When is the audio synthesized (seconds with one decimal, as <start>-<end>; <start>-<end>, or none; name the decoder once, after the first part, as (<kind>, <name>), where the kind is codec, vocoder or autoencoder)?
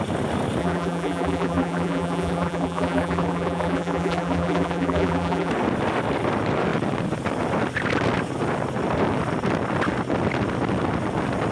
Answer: 0.6-5.5 (vocoder, BigVGAN v2)